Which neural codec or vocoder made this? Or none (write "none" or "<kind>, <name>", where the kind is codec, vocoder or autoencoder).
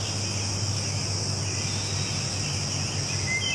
none